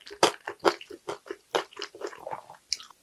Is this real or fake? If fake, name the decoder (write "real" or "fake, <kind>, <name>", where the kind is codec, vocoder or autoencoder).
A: real